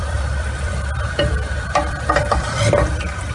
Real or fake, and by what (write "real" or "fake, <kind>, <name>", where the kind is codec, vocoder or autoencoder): fake, vocoder, BigVGAN v2